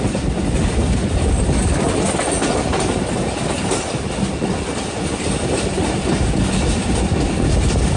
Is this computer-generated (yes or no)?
no